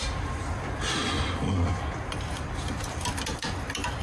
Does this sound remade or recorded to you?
recorded